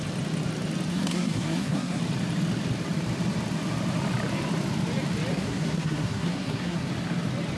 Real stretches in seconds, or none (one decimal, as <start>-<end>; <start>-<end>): 0.0-0.9; 2.0-5.3; 6.9-7.6